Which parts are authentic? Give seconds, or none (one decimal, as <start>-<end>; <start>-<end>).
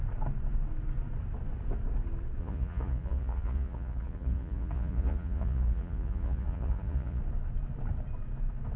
0.0-2.4; 7.2-8.8